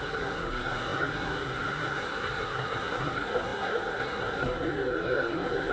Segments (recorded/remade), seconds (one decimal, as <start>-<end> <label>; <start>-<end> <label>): 0.0-5.7 remade